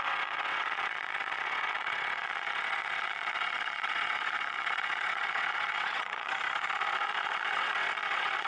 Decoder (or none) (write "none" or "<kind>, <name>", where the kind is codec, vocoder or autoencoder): vocoder, WaveNeXt